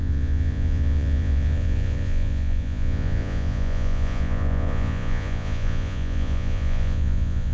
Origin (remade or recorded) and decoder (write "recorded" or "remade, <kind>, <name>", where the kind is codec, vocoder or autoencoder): remade, vocoder, Vocos